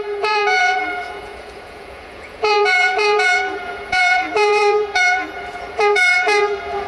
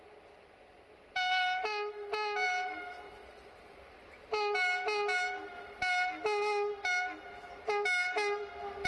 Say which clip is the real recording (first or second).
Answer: second